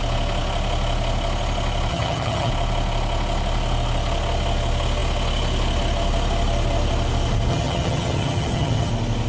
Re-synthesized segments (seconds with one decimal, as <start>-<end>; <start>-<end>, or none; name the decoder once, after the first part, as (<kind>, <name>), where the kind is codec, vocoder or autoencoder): 1.9-2.5 (vocoder, HiFi-GAN); 7.5-8.9